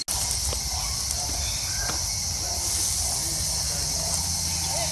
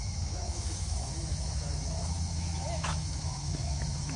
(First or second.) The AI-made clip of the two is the second